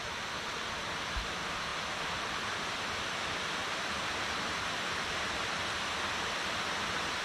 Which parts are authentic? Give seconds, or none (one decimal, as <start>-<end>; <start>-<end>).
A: 0.0-7.2

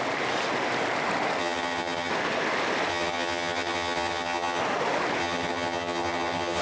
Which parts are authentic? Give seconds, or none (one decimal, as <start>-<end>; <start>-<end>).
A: 0.0-1.4; 2.1-2.9; 4.6-5.2

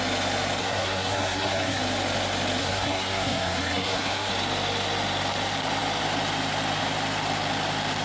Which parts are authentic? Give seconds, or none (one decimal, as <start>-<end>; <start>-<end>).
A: 0.0-0.6; 1.8-2.6; 4.3-8.0

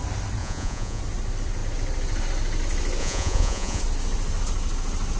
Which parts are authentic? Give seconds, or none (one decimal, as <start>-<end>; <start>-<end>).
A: 0.0-0.4; 1.0-3.0; 3.8-5.2